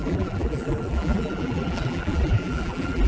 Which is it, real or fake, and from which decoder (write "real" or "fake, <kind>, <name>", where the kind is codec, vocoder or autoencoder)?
fake, vocoder, BigVGAN v2